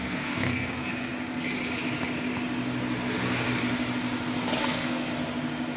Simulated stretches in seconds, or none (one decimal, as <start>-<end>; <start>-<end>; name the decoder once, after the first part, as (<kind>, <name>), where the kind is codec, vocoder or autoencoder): 0.0-1.1 (codec, SNAC); 4.6-5.1